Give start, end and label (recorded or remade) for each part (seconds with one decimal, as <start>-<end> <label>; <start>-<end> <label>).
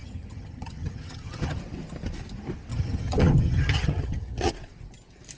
0.0-1.6 remade; 1.6-2.7 recorded; 2.7-4.5 remade; 4.5-5.4 recorded